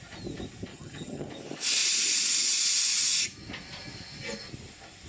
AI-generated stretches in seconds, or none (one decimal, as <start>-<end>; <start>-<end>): 0.7-1.3